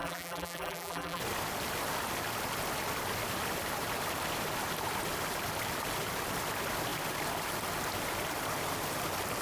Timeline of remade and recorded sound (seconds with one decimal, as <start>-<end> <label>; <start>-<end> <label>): 0.0-1.2 remade; 1.2-9.4 recorded